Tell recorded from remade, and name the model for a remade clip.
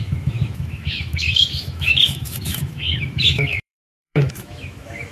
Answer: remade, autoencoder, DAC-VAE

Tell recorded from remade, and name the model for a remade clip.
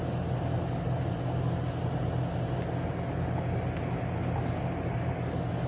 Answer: recorded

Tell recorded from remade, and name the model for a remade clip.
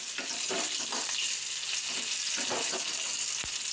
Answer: recorded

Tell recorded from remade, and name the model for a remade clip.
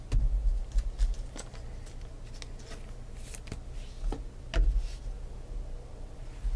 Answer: recorded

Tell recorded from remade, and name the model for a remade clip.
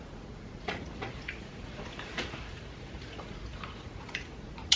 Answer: remade, vocoder, Vocos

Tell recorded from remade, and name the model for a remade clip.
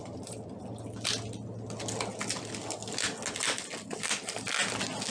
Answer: recorded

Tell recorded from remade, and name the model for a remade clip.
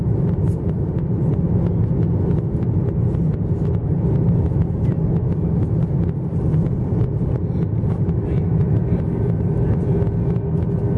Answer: recorded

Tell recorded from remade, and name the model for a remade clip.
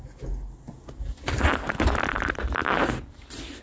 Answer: recorded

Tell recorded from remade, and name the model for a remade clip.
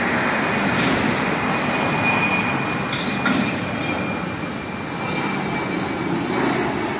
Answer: recorded